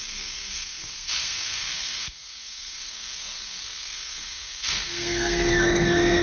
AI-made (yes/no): yes